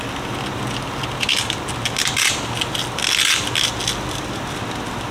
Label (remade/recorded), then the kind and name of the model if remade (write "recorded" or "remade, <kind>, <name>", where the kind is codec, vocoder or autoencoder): recorded